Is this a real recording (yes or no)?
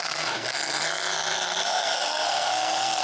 no